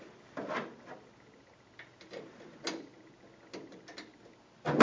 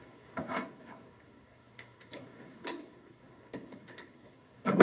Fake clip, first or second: second